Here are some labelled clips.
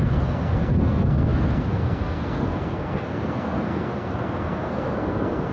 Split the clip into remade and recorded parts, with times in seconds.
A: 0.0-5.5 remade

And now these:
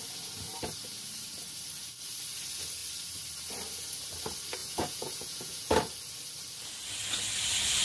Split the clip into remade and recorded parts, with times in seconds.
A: 0.0-4.6 recorded; 4.6-5.7 remade; 5.7-7.8 recorded

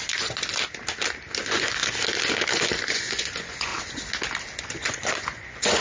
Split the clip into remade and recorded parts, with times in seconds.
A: 0.0-0.5 remade; 0.5-1.4 recorded; 1.4-1.8 remade; 1.8-2.9 recorded; 2.9-3.7 remade; 3.7-4.6 recorded; 4.6-5.8 remade